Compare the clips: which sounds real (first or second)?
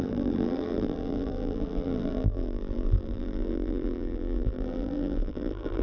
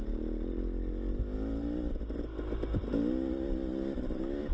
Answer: second